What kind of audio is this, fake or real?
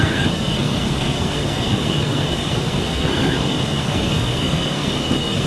fake